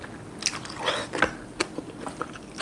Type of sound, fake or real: real